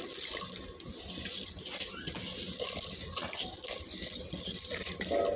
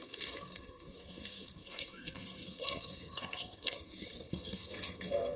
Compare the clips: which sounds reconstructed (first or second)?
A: second